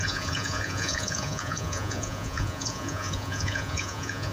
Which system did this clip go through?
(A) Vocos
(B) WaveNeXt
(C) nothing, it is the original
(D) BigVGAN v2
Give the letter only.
A